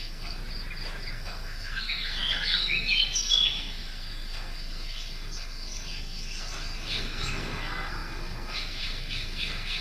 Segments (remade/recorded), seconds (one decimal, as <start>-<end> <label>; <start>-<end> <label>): 0.0-0.4 remade; 0.4-1.1 recorded; 1.1-9.8 remade